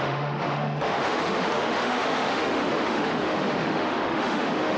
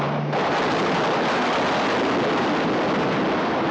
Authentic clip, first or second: second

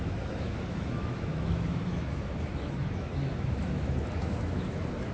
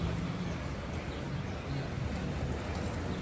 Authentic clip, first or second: second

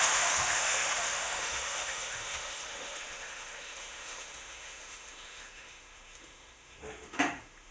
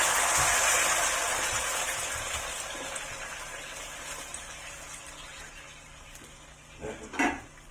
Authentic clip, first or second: second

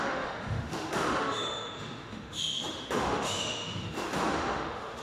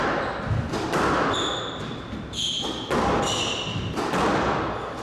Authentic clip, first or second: second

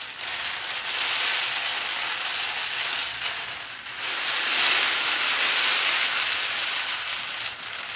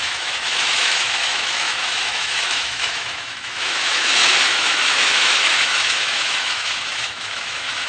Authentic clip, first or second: first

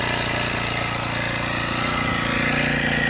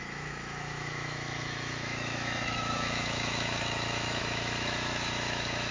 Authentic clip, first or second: first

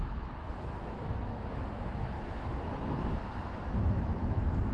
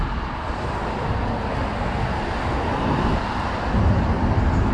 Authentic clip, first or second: second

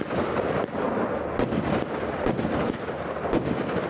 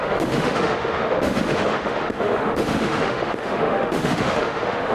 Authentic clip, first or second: first